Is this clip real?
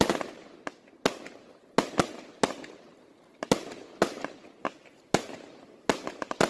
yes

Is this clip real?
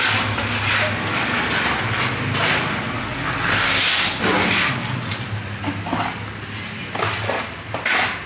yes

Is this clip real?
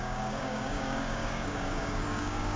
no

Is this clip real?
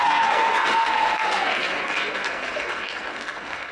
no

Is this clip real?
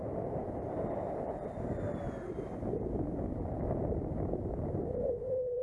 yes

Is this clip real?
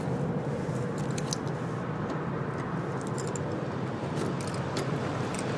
yes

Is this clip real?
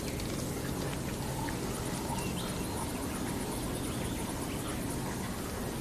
yes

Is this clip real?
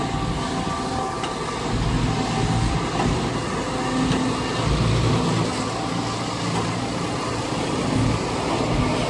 yes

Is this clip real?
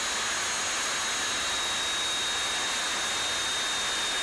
yes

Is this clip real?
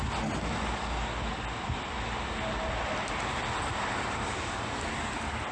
yes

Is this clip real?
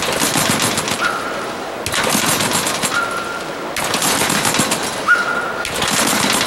yes